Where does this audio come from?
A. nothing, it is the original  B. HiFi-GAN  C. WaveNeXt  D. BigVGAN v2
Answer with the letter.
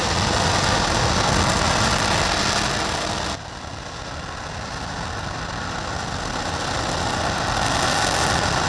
A